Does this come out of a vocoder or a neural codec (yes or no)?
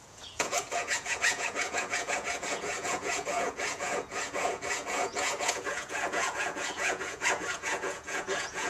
yes